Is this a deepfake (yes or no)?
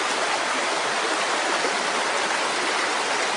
no